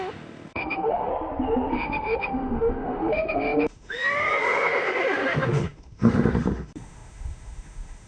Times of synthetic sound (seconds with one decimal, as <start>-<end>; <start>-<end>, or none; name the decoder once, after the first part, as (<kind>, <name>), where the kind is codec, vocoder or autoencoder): 0.0-1.1 (autoencoder, DAC-VAE); 1.7-8.1